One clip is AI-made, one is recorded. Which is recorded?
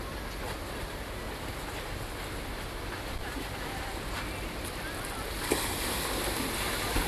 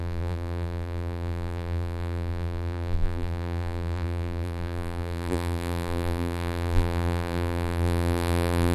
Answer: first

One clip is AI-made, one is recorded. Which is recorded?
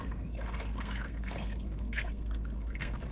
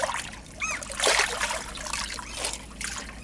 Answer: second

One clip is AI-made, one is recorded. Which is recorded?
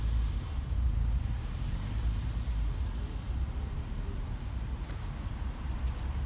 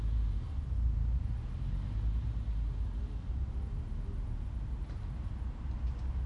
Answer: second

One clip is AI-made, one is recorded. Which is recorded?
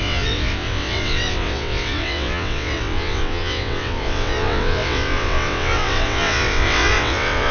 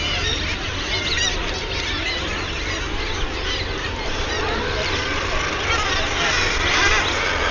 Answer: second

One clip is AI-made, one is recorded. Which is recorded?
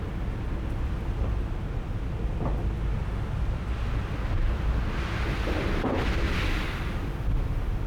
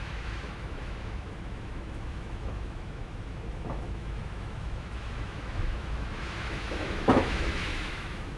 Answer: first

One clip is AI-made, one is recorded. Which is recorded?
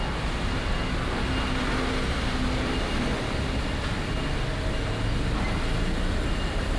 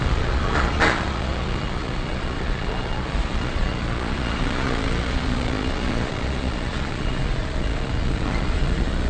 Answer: first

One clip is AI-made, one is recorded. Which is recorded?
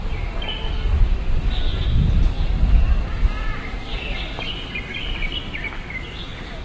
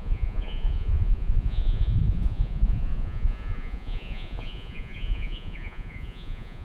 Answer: first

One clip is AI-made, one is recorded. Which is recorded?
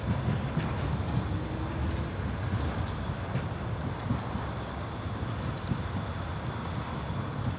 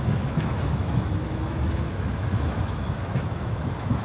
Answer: first